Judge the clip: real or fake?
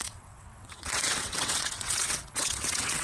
fake